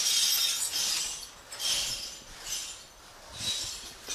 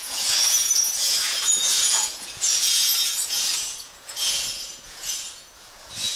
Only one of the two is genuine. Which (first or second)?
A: first